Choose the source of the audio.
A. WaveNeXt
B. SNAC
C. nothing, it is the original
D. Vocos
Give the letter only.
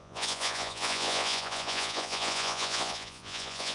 D